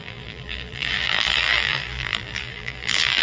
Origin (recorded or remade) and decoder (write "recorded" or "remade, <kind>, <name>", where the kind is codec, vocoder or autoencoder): remade, vocoder, BigVGAN v2